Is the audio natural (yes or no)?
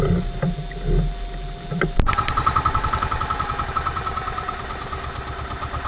yes